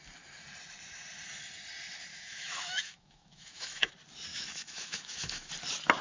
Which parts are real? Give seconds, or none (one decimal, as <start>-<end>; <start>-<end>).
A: 0.0-2.1; 3.9-4.3; 5.5-6.0